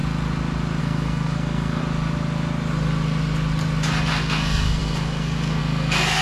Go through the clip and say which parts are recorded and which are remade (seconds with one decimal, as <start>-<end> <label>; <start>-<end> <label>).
0.0-0.8 recorded; 0.8-1.8 remade; 1.8-4.1 recorded; 4.1-6.2 remade